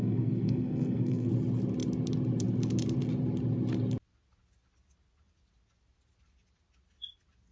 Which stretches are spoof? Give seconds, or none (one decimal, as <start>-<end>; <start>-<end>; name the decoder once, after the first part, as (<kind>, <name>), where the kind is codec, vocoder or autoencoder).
0.0-1.3 (codec, SNAC)